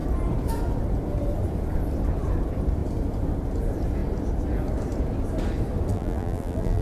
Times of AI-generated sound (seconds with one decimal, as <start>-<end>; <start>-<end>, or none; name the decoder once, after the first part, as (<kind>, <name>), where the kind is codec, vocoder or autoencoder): 5.9-6.8 (vocoder, BigVGAN v2)